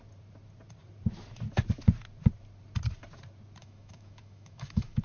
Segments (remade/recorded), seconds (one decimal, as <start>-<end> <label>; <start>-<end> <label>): 0.0-3.6 recorded; 3.6-5.0 remade